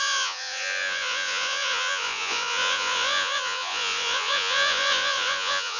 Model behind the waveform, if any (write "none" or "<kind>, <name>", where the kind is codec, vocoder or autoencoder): vocoder, Vocos